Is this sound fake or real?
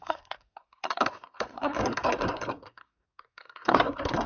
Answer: fake